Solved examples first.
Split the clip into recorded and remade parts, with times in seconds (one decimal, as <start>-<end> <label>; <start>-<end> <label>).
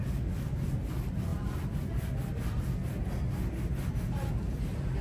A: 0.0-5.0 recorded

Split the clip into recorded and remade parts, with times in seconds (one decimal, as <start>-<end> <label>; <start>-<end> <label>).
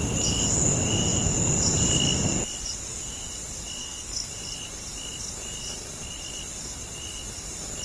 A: 0.0-3.8 recorded; 3.8-4.3 remade; 4.3-7.8 recorded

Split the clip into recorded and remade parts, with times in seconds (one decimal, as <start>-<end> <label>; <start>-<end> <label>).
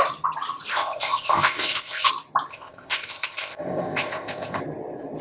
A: 0.0-0.7 recorded; 0.7-2.1 remade; 2.1-2.5 recorded; 2.5-4.6 remade; 4.6-5.2 recorded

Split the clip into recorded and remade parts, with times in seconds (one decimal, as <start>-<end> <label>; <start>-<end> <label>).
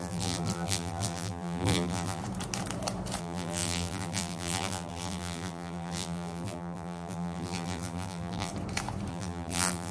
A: 0.0-2.2 remade; 2.2-3.2 recorded; 3.2-8.5 remade; 8.5-9.1 recorded; 9.1-9.9 remade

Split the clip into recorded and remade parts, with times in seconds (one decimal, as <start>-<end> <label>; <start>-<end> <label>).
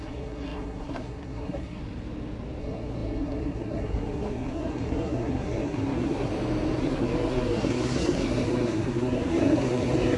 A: 0.0-1.8 remade; 1.8-2.6 recorded; 2.6-6.3 remade; 6.3-6.8 recorded; 6.8-10.2 remade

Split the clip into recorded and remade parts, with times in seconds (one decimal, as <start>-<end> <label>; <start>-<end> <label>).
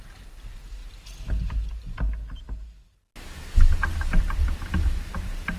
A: 0.0-0.8 remade; 0.8-4.2 recorded; 4.2-5.6 remade